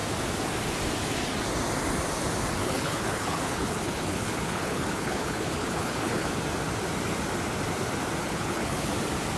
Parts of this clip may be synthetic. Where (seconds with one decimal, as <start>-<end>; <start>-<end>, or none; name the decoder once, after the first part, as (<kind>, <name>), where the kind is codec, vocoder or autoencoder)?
2.6-6.3 (codec, HILCodec); 8.2-8.9